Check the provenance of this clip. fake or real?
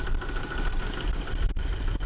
real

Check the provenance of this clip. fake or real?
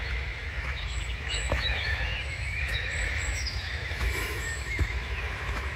fake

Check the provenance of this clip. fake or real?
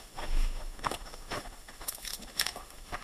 fake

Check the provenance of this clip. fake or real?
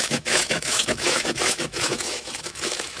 fake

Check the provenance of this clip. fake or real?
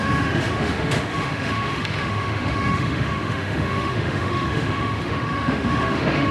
fake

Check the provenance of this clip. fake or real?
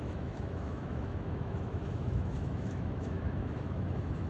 fake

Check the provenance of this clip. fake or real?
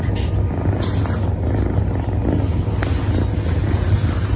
real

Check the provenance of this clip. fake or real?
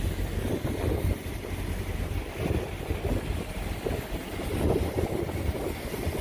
real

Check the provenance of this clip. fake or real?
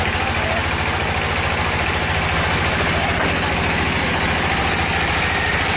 real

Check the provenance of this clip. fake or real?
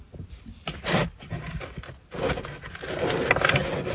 real